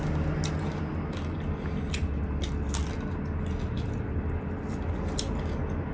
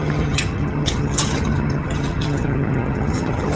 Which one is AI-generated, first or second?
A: second